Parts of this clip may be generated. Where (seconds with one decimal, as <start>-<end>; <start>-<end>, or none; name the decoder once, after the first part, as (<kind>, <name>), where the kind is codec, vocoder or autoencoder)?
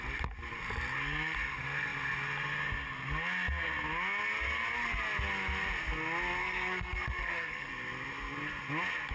6.4-7.7 (codec, SNAC)